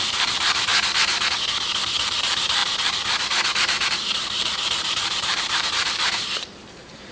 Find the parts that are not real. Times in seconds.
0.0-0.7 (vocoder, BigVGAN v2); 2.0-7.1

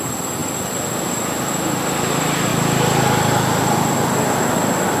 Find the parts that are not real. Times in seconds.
0.0-2.5 (vocoder, BigVGAN v2)

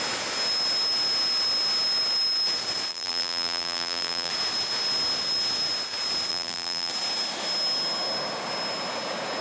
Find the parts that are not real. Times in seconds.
2.9-4.3 (vocoder, BigVGAN v2); 6.3-6.9

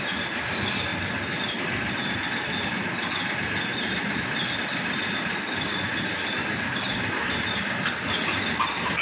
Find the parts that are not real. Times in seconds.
none

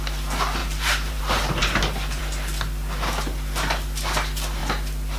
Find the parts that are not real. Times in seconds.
0.6-1.2 (vocoder, BigVGAN v2)

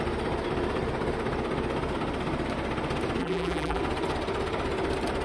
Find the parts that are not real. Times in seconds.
3.2-3.8 (vocoder, BigVGAN v2)

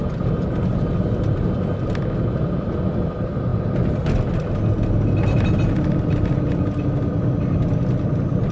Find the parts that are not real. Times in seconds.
none